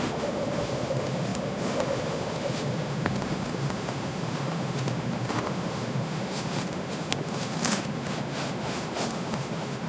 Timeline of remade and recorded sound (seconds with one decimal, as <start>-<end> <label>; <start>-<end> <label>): 0.0-9.9 remade